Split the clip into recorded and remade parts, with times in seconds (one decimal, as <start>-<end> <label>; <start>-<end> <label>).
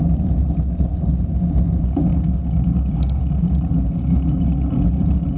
0.0-5.4 recorded